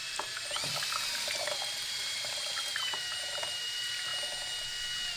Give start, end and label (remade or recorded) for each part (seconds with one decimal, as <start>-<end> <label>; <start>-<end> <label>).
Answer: 0.0-4.1 remade; 4.1-5.2 recorded